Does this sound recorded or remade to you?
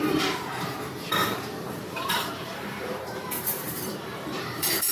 remade